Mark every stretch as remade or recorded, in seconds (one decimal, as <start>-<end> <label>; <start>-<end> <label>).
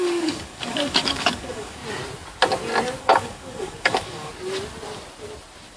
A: 0.0-1.8 remade; 1.8-3.0 recorded; 3.0-4.3 remade; 4.3-5.8 recorded